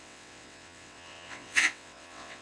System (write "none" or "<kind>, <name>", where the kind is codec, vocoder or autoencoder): vocoder, WaveNeXt